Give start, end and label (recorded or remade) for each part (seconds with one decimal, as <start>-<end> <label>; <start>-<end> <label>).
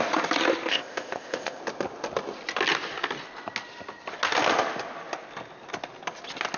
0.0-0.7 recorded; 0.7-1.6 remade; 1.6-6.6 recorded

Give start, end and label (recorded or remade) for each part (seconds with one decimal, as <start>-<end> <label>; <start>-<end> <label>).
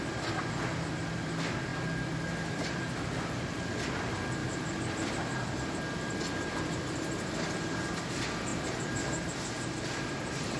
0.0-4.4 recorded; 4.4-5.5 remade; 5.5-8.5 recorded; 8.5-10.6 remade